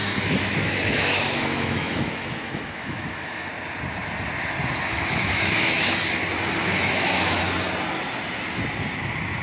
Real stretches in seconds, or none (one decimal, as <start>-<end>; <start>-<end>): 3.5-4.9; 5.9-6.6; 7.4-9.4